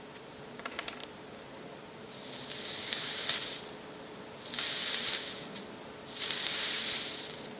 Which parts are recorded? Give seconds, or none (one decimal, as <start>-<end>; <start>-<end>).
0.0-7.6